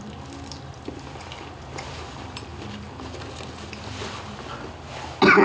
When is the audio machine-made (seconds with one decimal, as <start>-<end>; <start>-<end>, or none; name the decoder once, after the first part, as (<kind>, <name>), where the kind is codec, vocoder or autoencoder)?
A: none